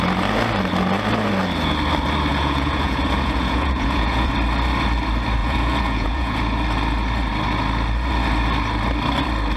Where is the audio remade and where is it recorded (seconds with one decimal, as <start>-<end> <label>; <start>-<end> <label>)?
0.0-2.3 recorded; 2.3-4.3 remade; 4.3-5.4 recorded; 5.4-6.4 remade; 6.4-9.6 recorded